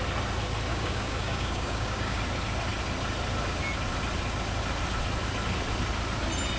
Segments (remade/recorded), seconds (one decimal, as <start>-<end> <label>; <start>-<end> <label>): 0.0-0.7 recorded; 0.7-2.2 remade; 2.2-6.6 recorded